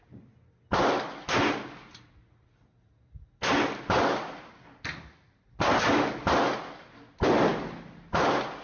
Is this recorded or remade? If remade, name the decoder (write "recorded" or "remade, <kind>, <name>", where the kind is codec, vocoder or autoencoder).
recorded